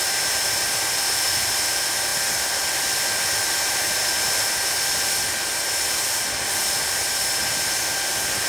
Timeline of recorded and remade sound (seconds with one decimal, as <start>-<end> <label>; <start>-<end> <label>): 0.0-8.5 recorded